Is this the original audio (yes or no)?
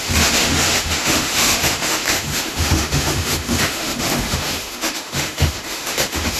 no